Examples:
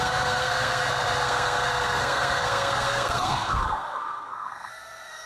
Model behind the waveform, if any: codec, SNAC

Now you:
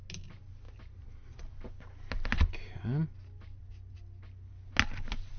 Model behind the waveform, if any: none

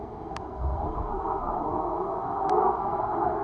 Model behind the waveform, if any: codec, SNAC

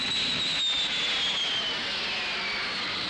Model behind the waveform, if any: none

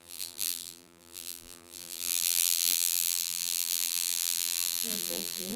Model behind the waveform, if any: vocoder, BigVGAN v2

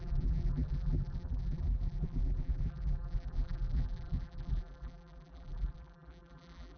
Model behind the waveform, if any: vocoder, BigVGAN v2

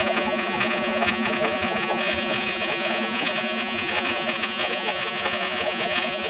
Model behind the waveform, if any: vocoder, Vocos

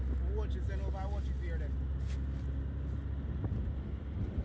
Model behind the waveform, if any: none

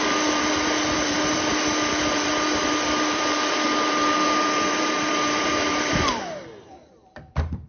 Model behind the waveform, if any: vocoder, BigVGAN v2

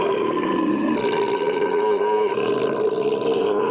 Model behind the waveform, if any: none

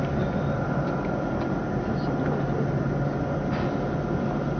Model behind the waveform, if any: none